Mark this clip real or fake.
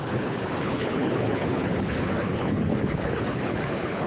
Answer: fake